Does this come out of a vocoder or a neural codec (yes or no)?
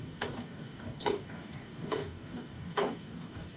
yes